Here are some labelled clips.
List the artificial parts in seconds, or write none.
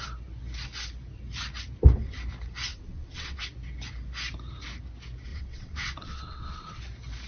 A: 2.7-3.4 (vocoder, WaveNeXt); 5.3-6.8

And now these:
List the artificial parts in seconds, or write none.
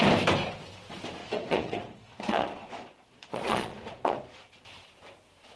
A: 1.2-4.6 (vocoder, Vocos)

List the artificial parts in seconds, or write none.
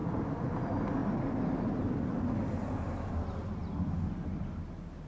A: 0.0-0.5 (vocoder, BigVGAN v2)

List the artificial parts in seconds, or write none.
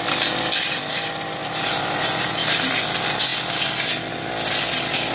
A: 1.4-2.7 (vocoder, BigVGAN v2)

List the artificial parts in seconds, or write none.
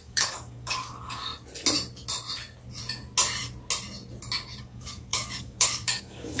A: 0.0-1.3 (codec, DAC); 4.6-6.4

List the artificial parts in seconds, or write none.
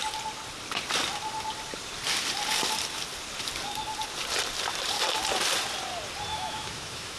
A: 6.3-7.2 (autoencoder, DAC-VAE)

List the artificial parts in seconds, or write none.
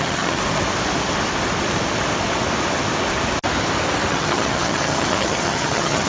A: 0.0-0.4 (vocoder, HiFi-GAN); 4.1-6.1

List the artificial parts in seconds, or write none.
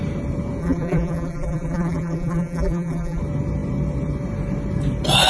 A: 0.6-3.2 (vocoder, BigVGAN v2)